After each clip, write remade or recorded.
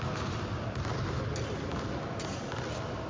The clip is recorded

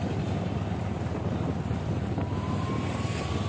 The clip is recorded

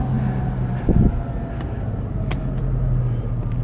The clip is recorded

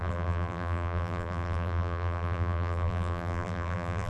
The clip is remade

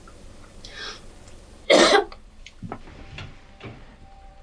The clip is remade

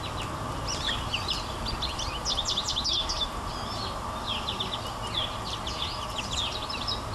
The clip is recorded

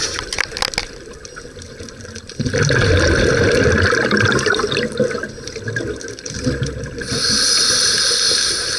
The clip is recorded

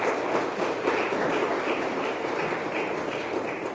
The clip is recorded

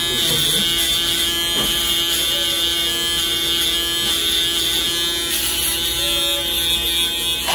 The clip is recorded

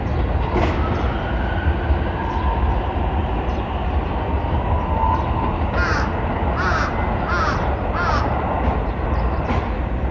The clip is recorded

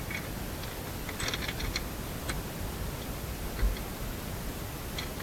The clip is recorded